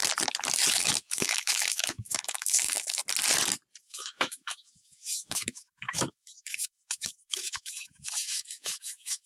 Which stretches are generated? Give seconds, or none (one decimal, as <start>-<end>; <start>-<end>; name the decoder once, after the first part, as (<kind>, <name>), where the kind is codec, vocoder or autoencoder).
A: 0.7-3.0 (autoencoder, DAC-VAE); 3.8-9.3